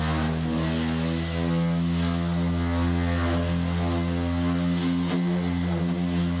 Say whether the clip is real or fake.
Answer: real